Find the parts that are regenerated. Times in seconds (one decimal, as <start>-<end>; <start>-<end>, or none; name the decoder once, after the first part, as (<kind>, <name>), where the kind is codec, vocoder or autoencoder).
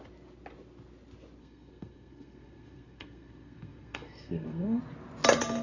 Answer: 1.4-4.8 (codec, SNAC)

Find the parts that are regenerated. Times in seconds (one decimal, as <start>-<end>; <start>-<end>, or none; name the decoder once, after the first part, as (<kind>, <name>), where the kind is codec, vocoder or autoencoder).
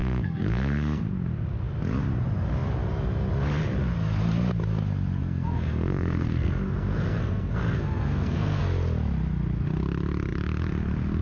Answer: 0.0-1.0 (codec, SNAC); 5.2-8.6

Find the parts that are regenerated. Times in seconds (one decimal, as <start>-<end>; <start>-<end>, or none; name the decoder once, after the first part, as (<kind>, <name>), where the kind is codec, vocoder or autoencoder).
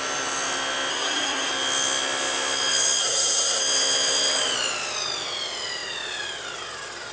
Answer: 0.9-1.5 (codec, SNAC); 3.0-3.6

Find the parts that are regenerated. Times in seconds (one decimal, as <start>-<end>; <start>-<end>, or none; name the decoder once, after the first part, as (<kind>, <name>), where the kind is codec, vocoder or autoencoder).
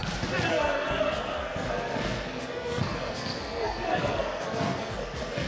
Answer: 0.5-5.5 (codec, SNAC)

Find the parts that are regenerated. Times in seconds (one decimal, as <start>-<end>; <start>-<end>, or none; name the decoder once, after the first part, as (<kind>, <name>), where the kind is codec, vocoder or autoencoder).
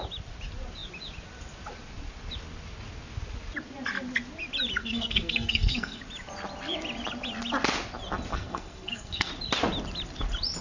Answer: 4.8-6.0 (codec, SNAC); 8.3-9.3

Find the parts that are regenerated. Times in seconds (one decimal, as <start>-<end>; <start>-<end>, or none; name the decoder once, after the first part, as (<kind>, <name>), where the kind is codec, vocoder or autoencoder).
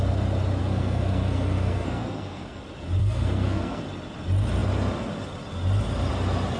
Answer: 0.6-2.6 (codec, SNAC); 3.0-3.8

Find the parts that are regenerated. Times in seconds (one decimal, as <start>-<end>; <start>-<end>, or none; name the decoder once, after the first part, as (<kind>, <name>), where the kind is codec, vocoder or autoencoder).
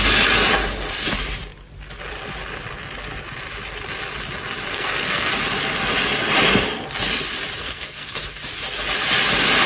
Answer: 4.7-5.3 (codec, SNAC); 7.6-8.2